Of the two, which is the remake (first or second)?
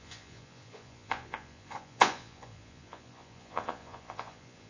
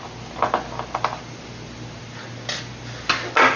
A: first